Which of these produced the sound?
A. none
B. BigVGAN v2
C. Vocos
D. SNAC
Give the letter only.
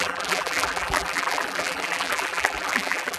B